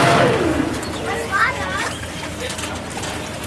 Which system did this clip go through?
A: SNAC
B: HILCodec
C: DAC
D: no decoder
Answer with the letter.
D